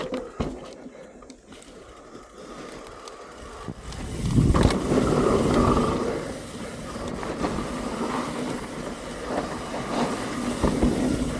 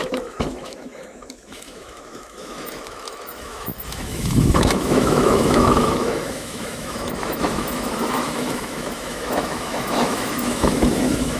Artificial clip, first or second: second